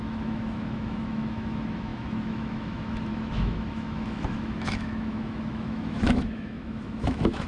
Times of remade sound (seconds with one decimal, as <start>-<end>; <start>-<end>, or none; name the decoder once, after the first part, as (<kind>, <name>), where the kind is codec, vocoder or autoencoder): 0.0-7.5 (autoencoder, DAC-VAE)